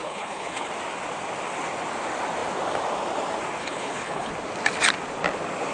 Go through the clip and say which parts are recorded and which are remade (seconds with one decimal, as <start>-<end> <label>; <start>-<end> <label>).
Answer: 0.0-0.7 remade; 0.7-3.6 recorded; 3.6-4.3 remade; 4.3-5.7 recorded